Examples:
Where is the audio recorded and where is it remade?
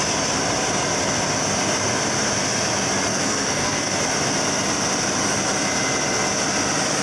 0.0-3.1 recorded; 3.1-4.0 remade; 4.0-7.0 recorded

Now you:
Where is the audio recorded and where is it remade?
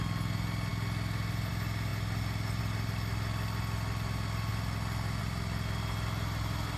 0.0-6.8 recorded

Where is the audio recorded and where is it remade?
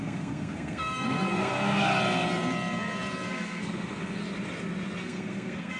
0.0-1.5 remade; 1.5-3.3 recorded; 3.3-4.2 remade; 4.2-5.0 recorded; 5.0-5.8 remade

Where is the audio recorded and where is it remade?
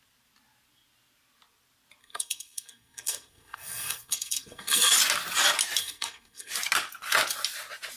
0.0-2.0 recorded; 2.0-4.9 remade; 4.9-5.8 recorded; 5.8-6.5 remade; 6.5-8.0 recorded